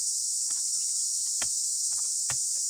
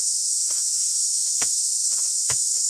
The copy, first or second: second